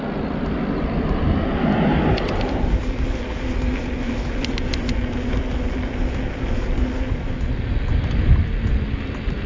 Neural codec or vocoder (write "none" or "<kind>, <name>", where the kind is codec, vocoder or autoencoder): none